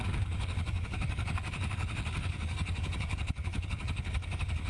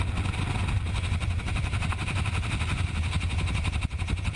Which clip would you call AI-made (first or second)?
first